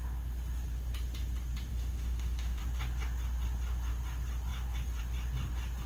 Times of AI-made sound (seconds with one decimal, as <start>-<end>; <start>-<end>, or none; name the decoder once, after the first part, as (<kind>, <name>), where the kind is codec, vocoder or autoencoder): 1.7-2.6 (autoencoder, DAC-VAE)